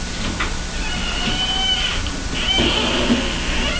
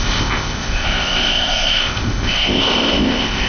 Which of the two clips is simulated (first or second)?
second